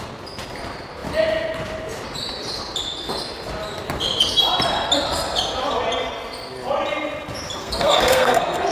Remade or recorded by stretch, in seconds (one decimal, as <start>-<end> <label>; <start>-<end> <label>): 0.0-7.6 recorded; 7.6-8.7 remade